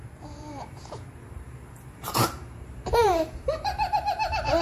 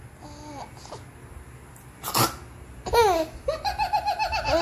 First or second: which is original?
second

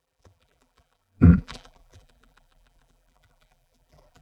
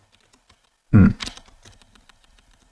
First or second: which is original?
second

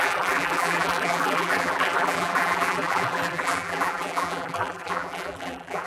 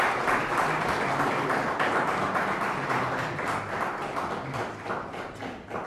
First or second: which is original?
second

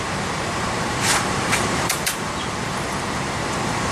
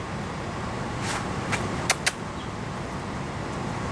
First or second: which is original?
second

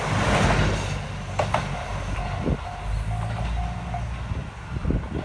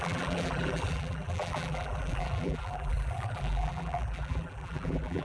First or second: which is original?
first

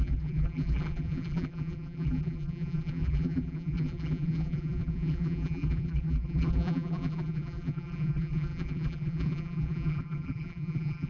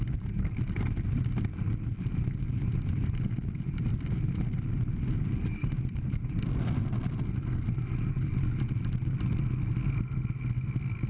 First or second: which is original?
second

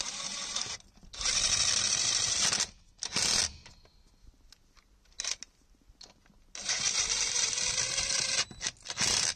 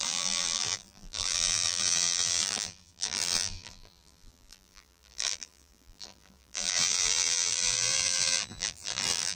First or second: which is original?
first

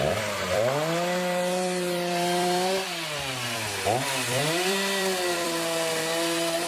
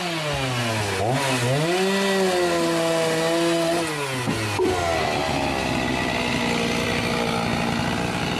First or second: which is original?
second